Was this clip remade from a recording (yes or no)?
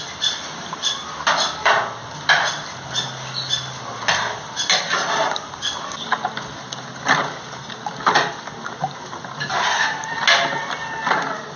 no